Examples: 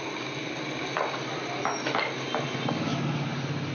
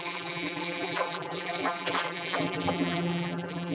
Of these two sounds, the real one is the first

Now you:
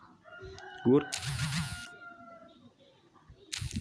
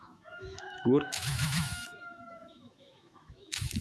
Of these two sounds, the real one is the first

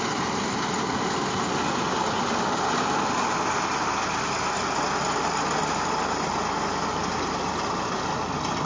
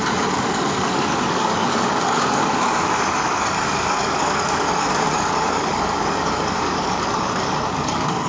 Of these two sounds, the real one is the first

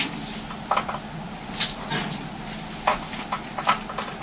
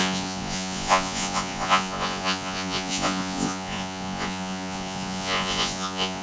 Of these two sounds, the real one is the first